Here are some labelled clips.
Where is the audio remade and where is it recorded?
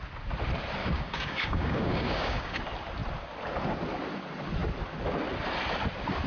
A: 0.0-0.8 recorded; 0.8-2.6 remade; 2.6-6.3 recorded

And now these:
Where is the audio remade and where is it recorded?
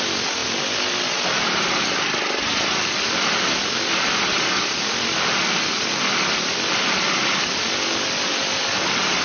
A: 0.0-9.2 recorded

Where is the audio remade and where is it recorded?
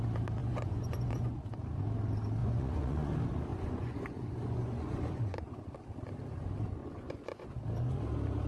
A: 0.0-0.4 recorded; 0.4-1.4 remade; 1.4-2.4 recorded; 2.4-3.1 remade; 3.1-3.5 recorded; 3.5-5.6 remade; 5.6-6.8 recorded; 6.8-7.5 remade; 7.5-8.5 recorded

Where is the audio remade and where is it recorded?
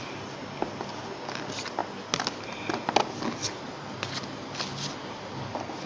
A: 0.0-5.9 recorded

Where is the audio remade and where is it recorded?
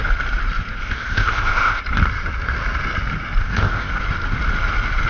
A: 0.0-0.8 recorded; 0.8-1.8 remade; 1.8-3.4 recorded; 3.4-3.9 remade; 3.9-5.1 recorded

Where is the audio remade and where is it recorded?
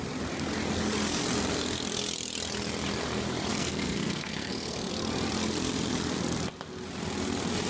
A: 0.0-3.5 recorded; 3.5-4.9 remade; 4.9-7.7 recorded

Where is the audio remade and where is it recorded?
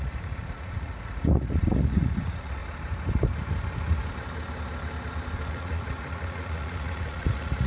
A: 0.0-2.6 remade; 2.6-5.5 recorded; 5.5-7.7 remade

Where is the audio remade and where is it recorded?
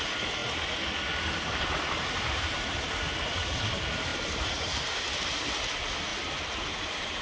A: 0.0-0.4 recorded; 0.4-2.9 remade; 2.9-4.1 recorded; 4.1-5.0 remade; 5.0-6.1 recorded; 6.1-7.2 remade